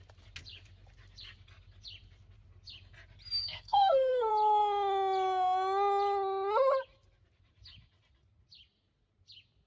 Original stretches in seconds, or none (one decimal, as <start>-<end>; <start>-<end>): 0.0-3.4; 4.3-9.7